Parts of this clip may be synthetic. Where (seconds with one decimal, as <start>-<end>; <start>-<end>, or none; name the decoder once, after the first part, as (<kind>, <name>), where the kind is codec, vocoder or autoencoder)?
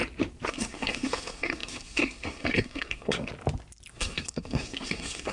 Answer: 0.5-3.3 (codec, SNAC); 3.9-5.3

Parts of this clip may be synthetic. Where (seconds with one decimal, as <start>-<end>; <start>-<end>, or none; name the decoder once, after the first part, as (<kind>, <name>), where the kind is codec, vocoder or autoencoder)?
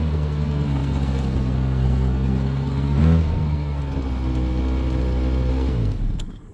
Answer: 0.0-3.8 (codec, SNAC); 5.5-6.5